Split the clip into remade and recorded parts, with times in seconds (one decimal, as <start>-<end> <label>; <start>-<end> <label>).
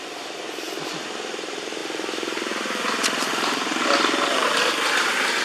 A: 0.0-5.4 remade